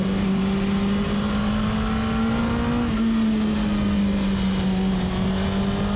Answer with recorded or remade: recorded